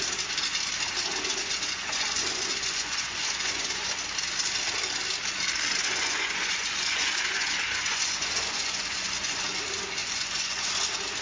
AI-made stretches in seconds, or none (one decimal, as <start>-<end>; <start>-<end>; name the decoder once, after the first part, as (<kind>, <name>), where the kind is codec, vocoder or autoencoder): 1.3-3.9 (vocoder, Vocos); 5.8-9.6; 10.0-10.7